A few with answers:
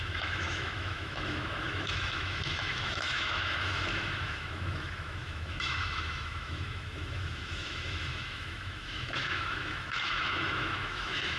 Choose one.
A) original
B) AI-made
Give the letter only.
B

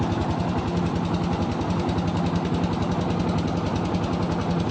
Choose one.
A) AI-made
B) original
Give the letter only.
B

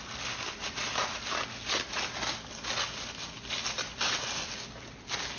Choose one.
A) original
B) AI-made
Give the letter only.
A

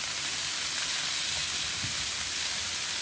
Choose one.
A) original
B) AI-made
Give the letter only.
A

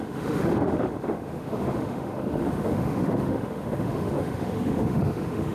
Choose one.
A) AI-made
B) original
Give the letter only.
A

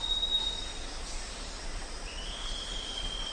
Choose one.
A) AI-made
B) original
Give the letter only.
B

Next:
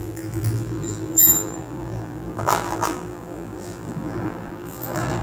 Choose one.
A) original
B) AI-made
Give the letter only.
B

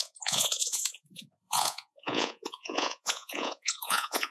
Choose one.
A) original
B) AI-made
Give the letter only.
B